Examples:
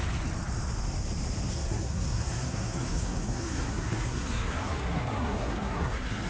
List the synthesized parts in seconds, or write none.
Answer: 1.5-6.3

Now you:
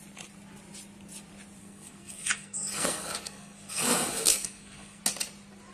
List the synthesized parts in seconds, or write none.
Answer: 1.6-5.0

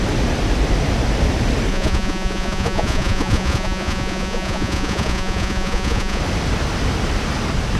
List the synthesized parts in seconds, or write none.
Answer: 1.7-6.2